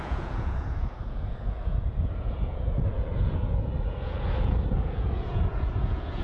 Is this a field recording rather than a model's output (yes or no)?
no